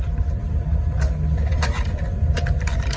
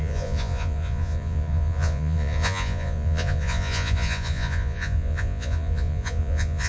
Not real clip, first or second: second